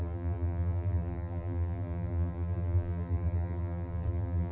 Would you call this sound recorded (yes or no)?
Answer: no